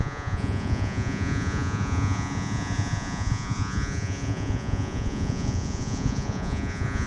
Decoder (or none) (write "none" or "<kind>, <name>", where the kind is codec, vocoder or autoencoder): vocoder, Vocos